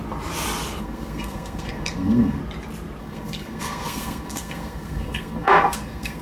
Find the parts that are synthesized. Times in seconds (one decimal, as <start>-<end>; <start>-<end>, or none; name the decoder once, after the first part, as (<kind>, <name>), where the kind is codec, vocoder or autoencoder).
0.8-2.4 (codec, SNAC); 3.0-6.2